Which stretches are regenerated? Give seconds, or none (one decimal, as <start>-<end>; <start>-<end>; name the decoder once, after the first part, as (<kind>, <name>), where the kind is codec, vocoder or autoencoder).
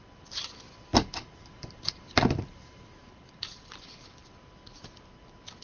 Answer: 0.9-4.3 (vocoder, BigVGAN v2)